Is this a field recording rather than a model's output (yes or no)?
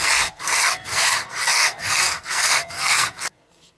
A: no